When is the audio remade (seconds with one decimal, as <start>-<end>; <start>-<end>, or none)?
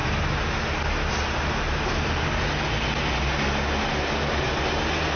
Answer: none